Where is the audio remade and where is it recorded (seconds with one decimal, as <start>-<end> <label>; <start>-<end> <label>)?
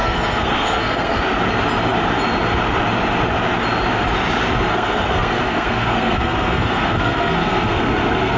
0.0-1.2 remade; 1.2-4.7 recorded; 4.7-8.4 remade